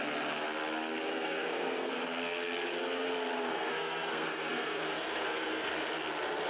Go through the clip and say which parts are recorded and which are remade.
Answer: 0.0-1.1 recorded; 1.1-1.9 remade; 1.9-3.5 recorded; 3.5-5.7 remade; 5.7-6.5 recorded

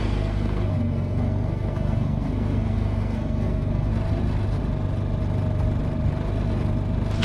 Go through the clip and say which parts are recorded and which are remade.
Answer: 0.0-3.9 remade; 3.9-7.2 recorded

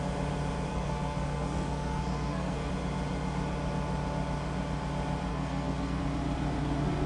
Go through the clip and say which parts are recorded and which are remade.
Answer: 0.0-0.7 recorded; 0.7-2.7 remade; 2.7-5.3 recorded; 5.3-6.0 remade; 6.0-7.1 recorded

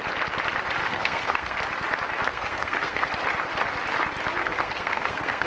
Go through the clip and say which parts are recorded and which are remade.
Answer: 0.0-0.8 recorded; 0.8-1.6 remade; 1.6-2.3 recorded; 2.3-3.1 remade; 3.1-4.4 recorded; 4.4-5.5 remade

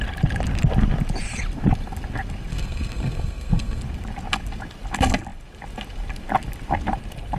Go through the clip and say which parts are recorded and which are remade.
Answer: 0.0-2.5 recorded; 2.5-3.8 remade; 3.8-7.4 recorded